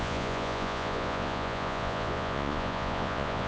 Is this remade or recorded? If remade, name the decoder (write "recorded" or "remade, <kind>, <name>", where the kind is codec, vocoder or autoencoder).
remade, vocoder, Vocos